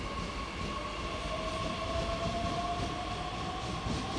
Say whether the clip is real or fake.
real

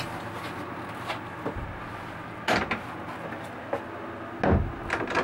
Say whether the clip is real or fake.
real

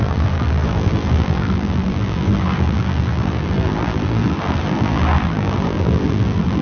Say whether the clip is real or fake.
fake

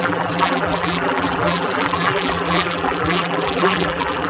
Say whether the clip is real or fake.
fake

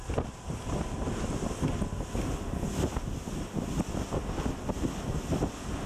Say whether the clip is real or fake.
real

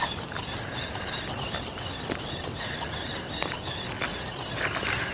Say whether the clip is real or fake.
real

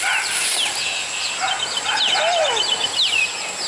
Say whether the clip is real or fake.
real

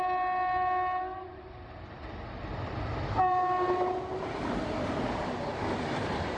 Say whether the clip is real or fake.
real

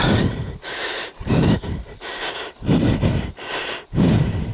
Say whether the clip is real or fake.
fake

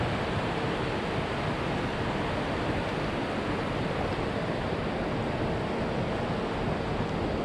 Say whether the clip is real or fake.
real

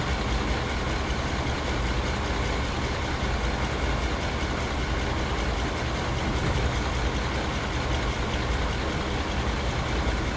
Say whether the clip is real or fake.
real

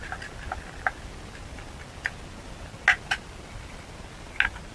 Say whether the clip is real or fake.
real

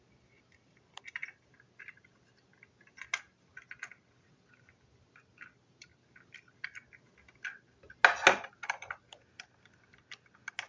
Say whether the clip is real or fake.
real